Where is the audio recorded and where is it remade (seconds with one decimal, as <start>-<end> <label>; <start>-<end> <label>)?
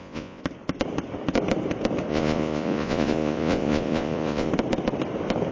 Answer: 0.0-0.4 remade; 0.4-2.1 recorded; 2.1-4.5 remade; 4.5-5.5 recorded